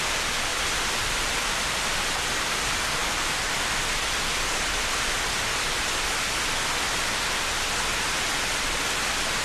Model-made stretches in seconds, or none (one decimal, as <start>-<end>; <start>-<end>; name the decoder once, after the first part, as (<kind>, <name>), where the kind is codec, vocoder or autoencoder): 0.5-1.6 (vocoder, BigVGAN v2); 3.0-4.0